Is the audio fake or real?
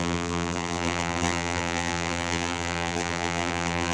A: fake